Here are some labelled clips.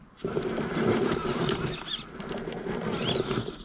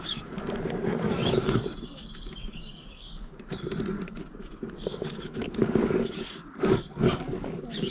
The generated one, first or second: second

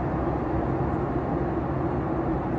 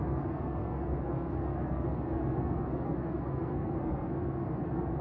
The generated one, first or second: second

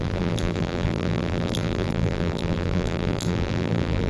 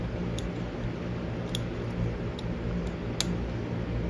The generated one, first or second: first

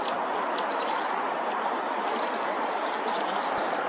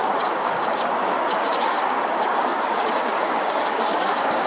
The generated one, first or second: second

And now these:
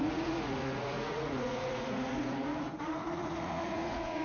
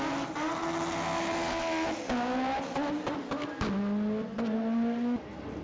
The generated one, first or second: first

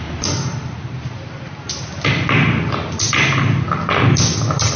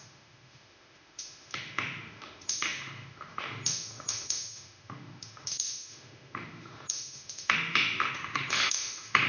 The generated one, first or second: second